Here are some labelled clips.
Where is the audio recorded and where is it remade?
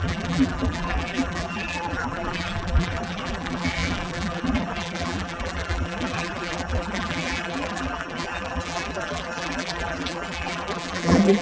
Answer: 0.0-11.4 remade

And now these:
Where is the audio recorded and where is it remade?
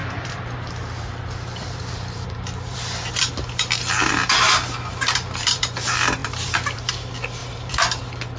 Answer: 0.0-3.3 remade; 3.3-4.9 recorded; 4.9-5.6 remade; 5.6-6.2 recorded; 6.2-6.9 remade; 6.9-7.4 recorded; 7.4-8.0 remade; 8.0-8.4 recorded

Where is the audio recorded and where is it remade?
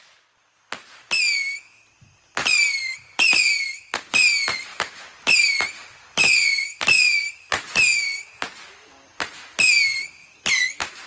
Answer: 0.0-11.1 recorded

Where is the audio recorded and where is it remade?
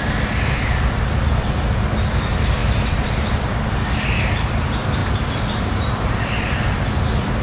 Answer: 0.0-2.6 recorded; 2.6-3.3 remade; 3.3-5.0 recorded; 5.0-6.8 remade; 6.8-7.4 recorded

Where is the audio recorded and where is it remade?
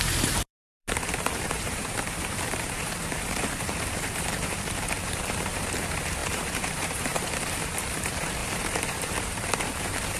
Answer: 0.0-10.2 remade